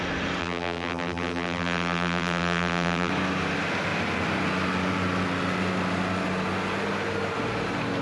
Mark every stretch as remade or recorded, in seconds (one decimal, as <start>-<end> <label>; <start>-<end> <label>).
0.0-0.4 recorded; 0.4-3.1 remade; 3.1-8.0 recorded